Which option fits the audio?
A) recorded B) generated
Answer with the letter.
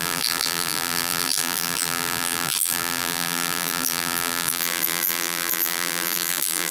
B